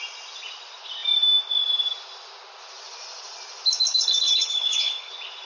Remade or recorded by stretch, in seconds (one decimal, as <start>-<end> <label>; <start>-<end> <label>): 0.0-3.9 recorded; 3.9-5.1 remade; 5.1-5.5 recorded